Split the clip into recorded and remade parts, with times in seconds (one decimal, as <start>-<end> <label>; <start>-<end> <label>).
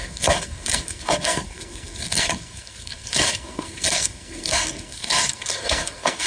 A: 0.0-6.3 remade